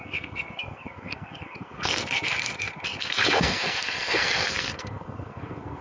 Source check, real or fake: fake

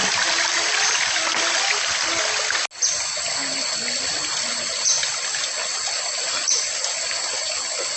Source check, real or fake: real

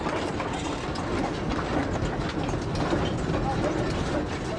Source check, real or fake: real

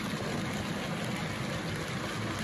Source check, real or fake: real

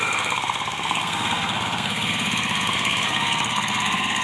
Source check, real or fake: fake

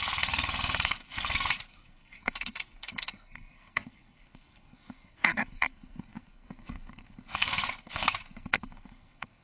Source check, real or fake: fake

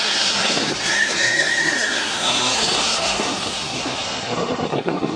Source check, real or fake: fake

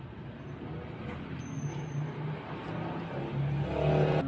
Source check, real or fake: real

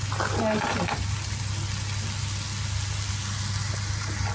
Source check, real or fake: real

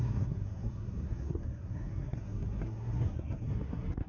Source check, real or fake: fake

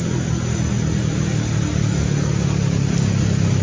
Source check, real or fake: real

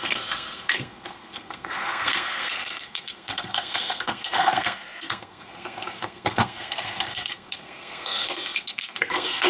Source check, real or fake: fake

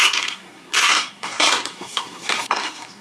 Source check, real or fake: fake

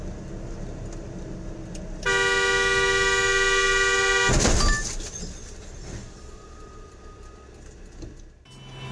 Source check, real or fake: real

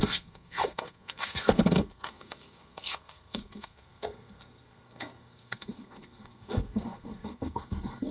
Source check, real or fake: fake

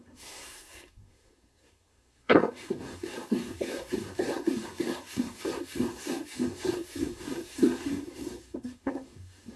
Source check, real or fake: fake